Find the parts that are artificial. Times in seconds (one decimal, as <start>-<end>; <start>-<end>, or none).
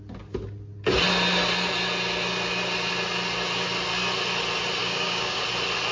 4.8-5.4